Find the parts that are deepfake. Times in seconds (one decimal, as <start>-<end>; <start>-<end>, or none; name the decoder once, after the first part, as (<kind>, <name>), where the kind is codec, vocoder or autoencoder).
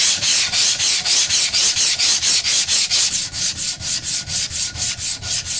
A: none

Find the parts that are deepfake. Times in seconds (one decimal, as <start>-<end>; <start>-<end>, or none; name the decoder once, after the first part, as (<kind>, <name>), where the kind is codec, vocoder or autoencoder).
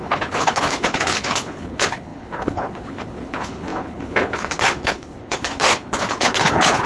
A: 0.0-6.9 (codec, HILCodec)